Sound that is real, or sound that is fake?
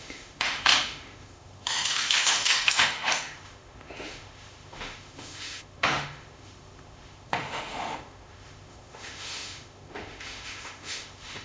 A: fake